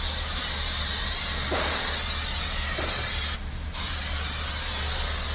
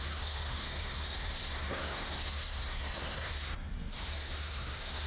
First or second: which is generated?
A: second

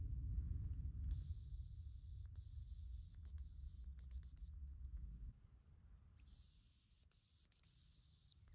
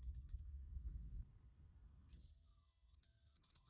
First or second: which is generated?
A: second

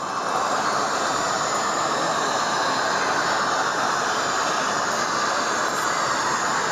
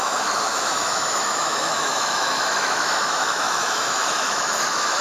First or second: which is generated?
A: second